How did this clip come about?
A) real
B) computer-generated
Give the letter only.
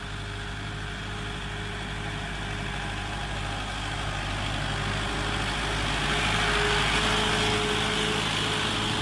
A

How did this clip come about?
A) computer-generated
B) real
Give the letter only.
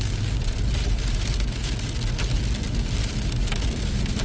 B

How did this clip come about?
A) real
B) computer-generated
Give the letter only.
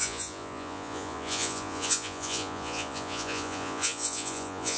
B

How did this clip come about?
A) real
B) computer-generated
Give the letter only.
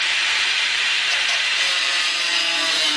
B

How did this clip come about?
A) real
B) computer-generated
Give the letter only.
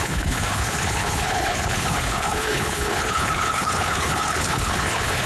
B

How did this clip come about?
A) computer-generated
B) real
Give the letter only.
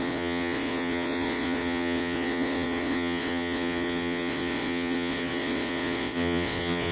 A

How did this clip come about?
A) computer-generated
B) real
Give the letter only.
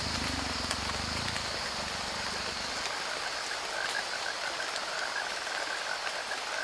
B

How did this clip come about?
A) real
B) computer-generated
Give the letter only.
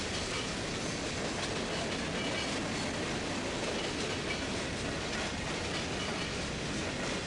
A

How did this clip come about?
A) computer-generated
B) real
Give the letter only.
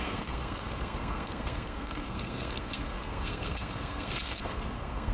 A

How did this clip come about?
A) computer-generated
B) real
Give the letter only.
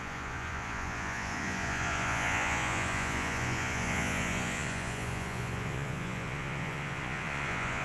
A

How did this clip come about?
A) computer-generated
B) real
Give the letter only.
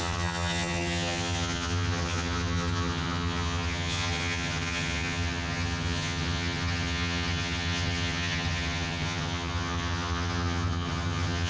A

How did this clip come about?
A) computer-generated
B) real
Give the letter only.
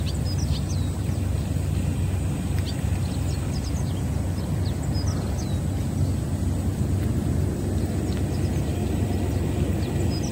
B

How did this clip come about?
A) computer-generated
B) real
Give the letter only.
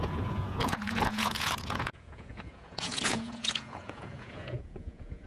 A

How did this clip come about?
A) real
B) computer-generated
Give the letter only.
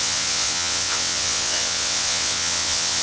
B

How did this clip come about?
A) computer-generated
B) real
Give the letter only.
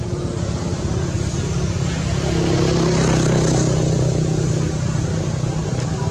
B